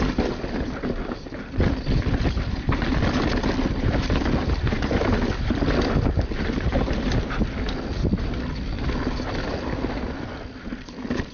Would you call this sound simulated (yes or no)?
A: no